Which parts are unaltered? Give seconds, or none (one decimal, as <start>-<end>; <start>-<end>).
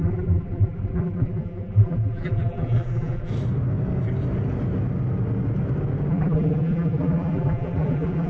3.3-6.1